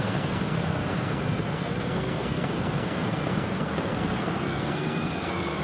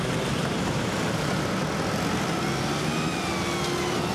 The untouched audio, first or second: second